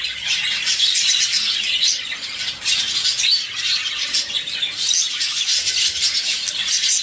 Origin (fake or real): real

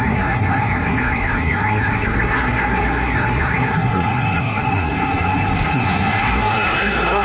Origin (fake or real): fake